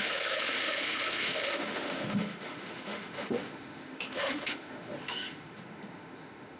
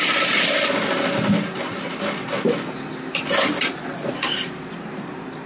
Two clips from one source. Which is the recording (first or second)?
second